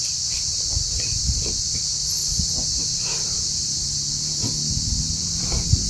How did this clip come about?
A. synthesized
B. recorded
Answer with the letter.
A